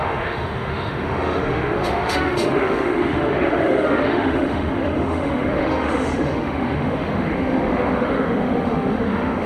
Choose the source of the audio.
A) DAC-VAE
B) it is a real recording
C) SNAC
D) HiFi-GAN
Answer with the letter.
A